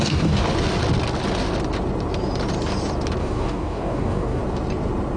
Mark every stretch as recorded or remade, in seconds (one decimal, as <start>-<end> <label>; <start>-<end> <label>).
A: 0.0-0.4 remade; 0.4-3.2 recorded; 3.2-4.4 remade; 4.4-5.2 recorded